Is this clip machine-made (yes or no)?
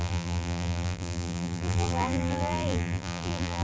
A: yes